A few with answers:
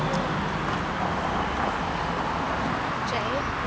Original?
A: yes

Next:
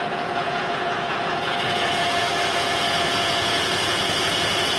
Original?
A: no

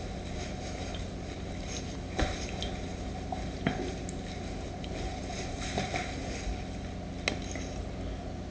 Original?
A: yes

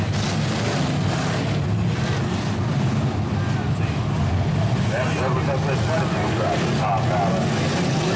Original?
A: yes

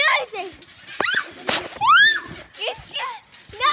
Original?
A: yes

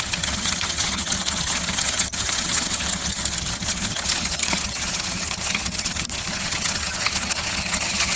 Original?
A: no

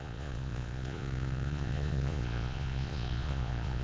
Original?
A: no